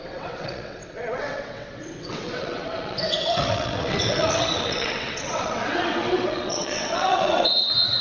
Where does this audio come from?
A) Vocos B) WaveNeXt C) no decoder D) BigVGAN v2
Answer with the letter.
B